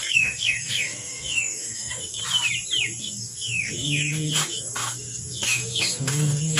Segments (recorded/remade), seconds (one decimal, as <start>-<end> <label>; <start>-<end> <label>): 0.0-2.2 remade; 2.2-3.0 recorded; 3.0-6.6 remade